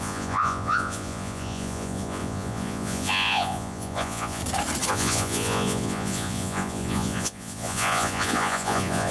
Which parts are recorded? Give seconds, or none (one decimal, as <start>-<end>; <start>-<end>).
4.4-4.9